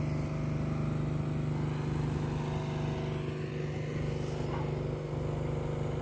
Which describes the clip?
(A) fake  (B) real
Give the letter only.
B